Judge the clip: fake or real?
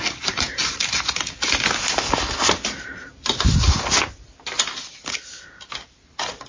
real